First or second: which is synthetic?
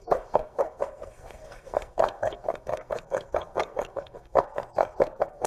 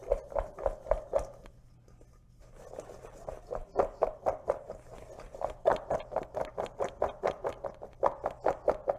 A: first